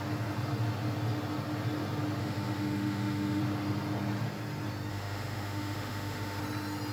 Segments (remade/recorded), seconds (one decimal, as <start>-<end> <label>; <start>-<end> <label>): 0.0-2.2 recorded; 2.2-3.4 remade; 3.4-4.9 recorded; 4.9-6.4 remade; 6.4-6.9 recorded